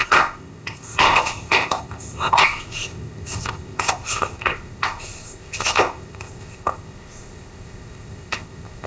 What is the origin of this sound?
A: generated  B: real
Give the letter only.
A